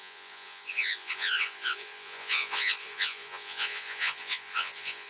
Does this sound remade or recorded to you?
remade